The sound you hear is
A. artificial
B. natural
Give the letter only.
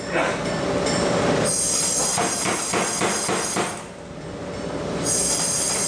B